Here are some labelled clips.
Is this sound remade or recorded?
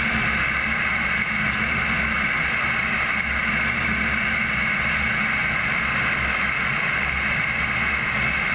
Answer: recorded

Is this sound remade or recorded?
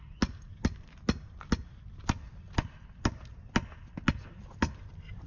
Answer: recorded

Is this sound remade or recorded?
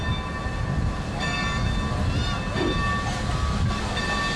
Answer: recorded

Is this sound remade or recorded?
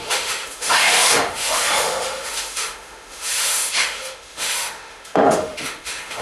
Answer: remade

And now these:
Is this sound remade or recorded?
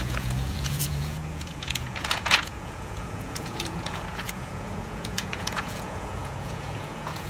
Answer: remade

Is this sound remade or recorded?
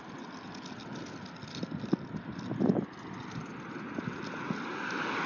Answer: recorded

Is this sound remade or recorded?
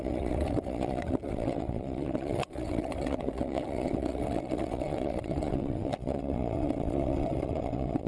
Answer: remade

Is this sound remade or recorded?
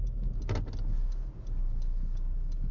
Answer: recorded